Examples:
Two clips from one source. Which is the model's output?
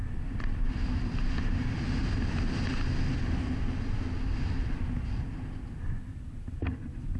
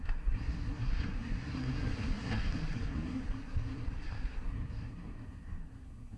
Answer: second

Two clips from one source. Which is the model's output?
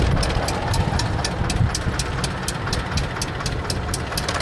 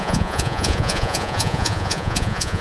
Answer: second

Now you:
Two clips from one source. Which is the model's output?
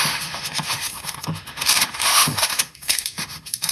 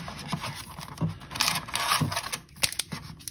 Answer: first